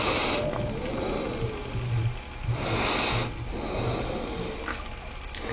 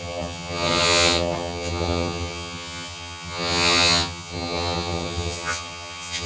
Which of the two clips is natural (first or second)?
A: first